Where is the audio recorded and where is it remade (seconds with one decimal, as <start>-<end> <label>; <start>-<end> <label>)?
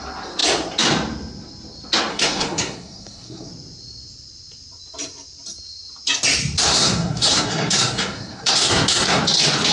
0.0-2.1 recorded; 2.1-3.5 remade; 3.5-6.7 recorded; 6.7-9.2 remade; 9.2-9.7 recorded